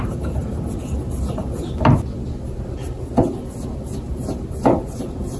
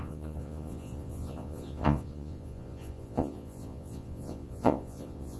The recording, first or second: first